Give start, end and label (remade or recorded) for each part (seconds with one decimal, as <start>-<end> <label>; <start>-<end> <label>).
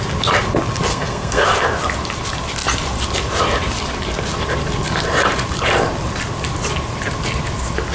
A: 0.0-0.9 recorded; 0.9-1.4 remade; 1.4-7.9 recorded